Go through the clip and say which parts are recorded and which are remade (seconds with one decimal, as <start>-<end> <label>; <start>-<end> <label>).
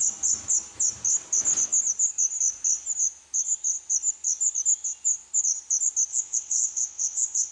0.0-6.1 recorded; 6.1-7.5 remade